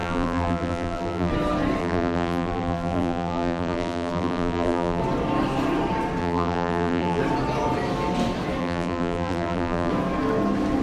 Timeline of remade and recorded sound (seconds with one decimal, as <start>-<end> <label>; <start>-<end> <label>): 0.0-1.3 remade; 1.3-1.8 recorded; 1.8-5.0 remade; 5.0-6.2 recorded; 6.2-7.2 remade; 7.2-8.6 recorded; 8.6-9.9 remade; 9.9-10.8 recorded